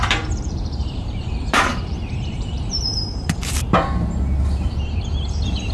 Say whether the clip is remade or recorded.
remade